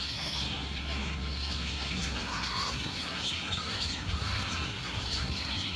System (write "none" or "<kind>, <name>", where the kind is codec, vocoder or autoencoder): codec, SNAC